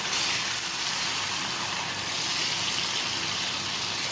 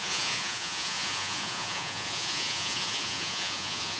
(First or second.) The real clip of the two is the first